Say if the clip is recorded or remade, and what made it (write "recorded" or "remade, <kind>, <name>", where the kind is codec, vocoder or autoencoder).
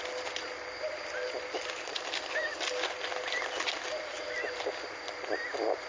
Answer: recorded